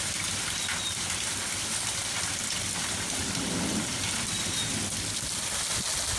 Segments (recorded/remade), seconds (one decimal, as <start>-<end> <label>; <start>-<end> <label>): 0.0-6.2 recorded